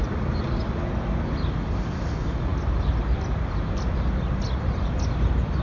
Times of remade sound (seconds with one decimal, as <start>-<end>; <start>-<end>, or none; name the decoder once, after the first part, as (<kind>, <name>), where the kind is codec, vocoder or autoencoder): 0.0-0.5 (vocoder, BigVGAN v2)